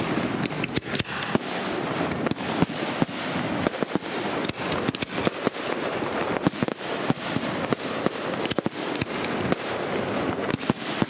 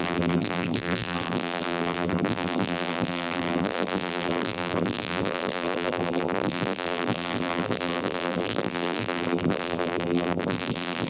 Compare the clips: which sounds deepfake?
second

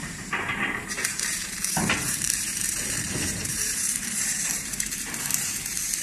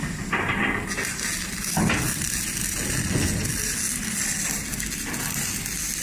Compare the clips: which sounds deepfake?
first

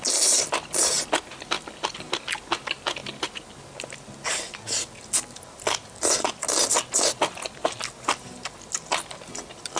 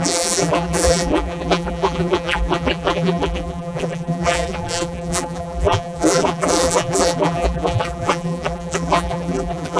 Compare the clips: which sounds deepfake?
second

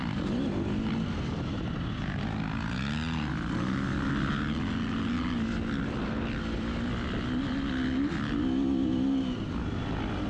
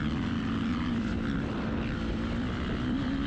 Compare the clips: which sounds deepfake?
second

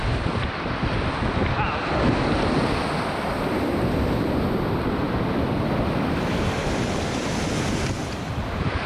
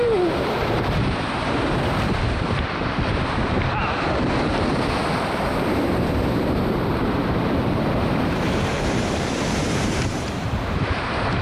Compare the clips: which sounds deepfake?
second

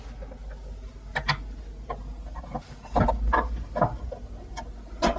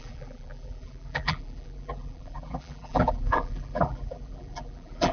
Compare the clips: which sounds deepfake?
second